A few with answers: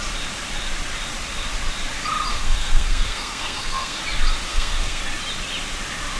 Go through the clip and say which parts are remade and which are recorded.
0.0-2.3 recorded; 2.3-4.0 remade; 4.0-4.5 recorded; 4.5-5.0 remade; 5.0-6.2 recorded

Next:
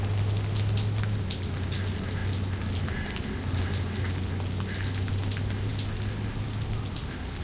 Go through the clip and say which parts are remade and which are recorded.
0.0-7.4 recorded

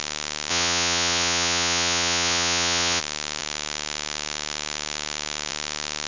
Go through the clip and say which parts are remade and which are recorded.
0.0-0.5 recorded; 0.5-3.0 remade; 3.0-6.1 recorded